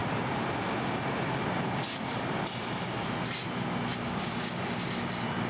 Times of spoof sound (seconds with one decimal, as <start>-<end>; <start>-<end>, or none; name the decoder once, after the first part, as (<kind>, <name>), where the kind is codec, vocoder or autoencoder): 3.9-4.6 (codec, DAC)